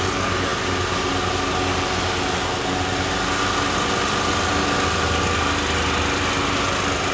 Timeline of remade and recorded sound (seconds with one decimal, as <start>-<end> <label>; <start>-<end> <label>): 0.0-7.1 recorded